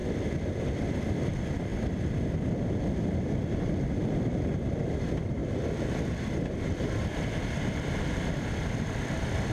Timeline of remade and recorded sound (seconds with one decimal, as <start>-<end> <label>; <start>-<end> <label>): 0.0-0.6 recorded; 0.6-1.7 remade; 1.7-4.3 recorded; 4.3-5.4 remade; 5.4-6.6 recorded; 6.6-9.5 remade